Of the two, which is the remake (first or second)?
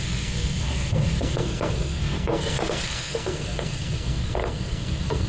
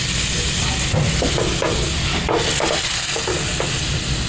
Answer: first